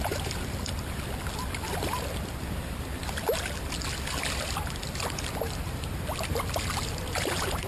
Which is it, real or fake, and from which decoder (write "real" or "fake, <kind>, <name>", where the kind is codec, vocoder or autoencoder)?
real